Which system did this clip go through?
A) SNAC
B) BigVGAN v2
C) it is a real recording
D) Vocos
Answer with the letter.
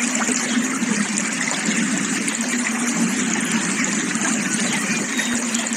C